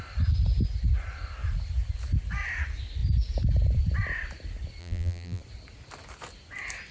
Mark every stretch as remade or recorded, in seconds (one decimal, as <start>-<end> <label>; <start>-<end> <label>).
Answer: 0.0-4.8 recorded; 4.8-5.4 remade; 5.4-6.9 recorded